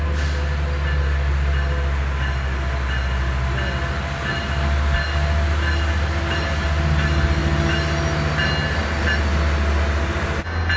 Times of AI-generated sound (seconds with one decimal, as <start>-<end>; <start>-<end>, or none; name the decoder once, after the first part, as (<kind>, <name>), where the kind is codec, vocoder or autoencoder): none